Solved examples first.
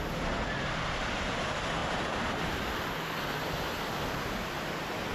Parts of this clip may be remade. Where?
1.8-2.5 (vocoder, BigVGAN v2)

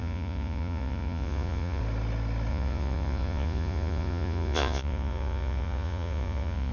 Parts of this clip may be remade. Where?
0.0-1.8 (vocoder, Vocos); 2.5-6.7

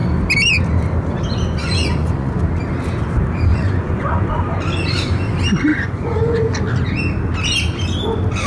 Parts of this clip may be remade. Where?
1.6-2.4 (vocoder, Vocos); 3.5-4.3; 5.7-6.5

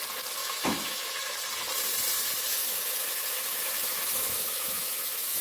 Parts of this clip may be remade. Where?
0.4-1.2 (autoencoder, DAC-VAE); 2.5-5.4

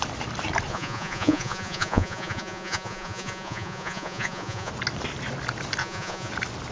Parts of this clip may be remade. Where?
0.7-4.7 (vocoder, Vocos); 5.8-6.3

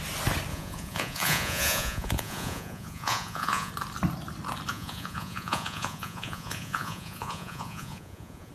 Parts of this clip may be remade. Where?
0.5-3.7 (vocoder, Vocos); 4.7-8.5